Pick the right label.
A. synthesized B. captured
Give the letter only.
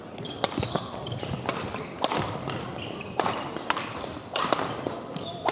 A